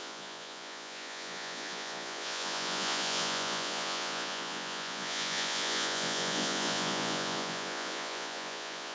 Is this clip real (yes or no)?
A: no